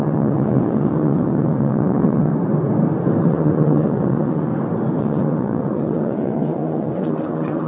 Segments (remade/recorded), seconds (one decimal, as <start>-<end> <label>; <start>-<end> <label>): 0.0-2.3 remade; 2.3-3.2 recorded; 3.2-4.5 remade; 4.5-5.0 recorded; 5.0-7.7 remade